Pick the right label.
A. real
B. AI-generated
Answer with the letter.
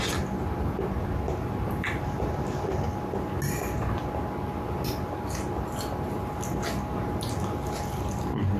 A